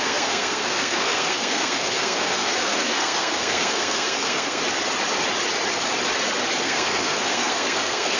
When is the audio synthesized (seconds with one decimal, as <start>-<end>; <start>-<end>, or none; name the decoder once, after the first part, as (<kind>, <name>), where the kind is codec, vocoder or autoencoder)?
0.0-4.6 (codec, SNAC); 6.6-8.2

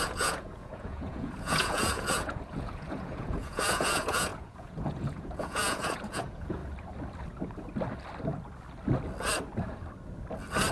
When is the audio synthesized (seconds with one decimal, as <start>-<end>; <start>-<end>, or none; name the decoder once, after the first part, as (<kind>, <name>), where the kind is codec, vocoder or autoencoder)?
0.0-6.6 (vocoder, Vocos)

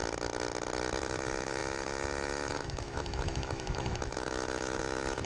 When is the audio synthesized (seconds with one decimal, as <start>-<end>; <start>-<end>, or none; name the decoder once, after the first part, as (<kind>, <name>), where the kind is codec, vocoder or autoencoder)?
1.0-5.3 (autoencoder, DAC-VAE)

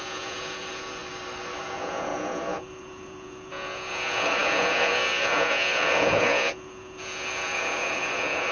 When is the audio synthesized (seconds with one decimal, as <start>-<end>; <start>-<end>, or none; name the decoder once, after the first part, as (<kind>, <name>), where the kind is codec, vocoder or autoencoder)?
0.0-1.0 (vocoder, Vocos); 1.6-8.5

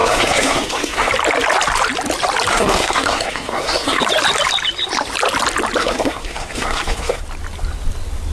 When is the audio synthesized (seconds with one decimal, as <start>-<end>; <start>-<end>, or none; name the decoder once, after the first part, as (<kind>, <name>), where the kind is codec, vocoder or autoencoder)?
0.0-1.1 (codec, SNAC); 2.5-4.0; 5.8-7.2

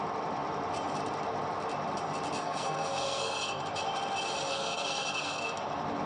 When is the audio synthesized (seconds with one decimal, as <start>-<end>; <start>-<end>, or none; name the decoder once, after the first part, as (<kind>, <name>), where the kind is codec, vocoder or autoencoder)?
2.4-3.6 (codec, SNAC); 4.5-5.6

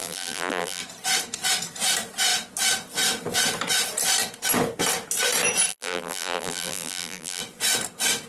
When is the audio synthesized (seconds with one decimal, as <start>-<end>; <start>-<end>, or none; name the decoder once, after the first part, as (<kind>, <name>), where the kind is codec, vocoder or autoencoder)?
0.0-0.8 (vocoder, BigVGAN v2); 5.7-7.4